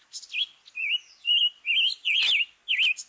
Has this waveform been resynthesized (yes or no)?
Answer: no